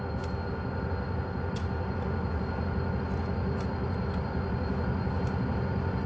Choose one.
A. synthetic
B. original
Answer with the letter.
B